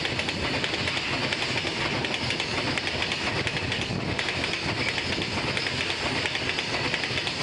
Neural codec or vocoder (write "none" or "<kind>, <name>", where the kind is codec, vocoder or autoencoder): none